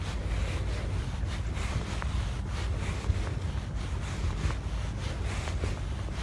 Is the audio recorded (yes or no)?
yes